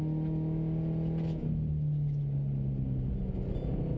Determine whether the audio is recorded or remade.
recorded